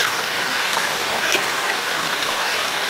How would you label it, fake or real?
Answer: fake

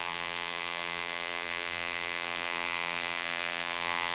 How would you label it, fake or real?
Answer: fake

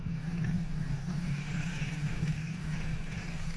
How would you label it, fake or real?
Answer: fake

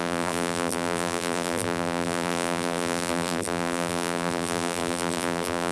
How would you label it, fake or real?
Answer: fake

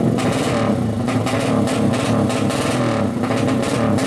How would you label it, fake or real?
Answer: real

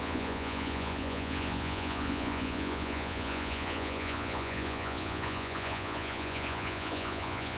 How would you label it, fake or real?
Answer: fake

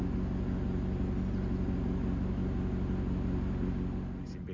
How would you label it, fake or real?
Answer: real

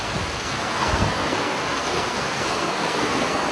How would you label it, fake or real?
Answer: fake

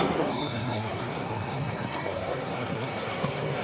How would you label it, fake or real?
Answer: fake